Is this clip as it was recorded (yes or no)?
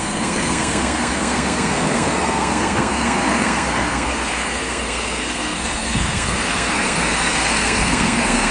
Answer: no